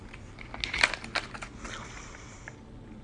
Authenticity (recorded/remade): recorded